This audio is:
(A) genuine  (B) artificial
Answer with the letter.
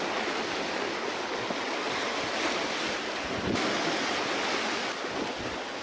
A